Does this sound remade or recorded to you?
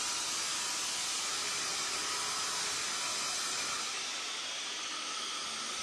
recorded